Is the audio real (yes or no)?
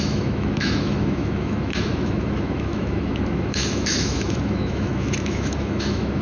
no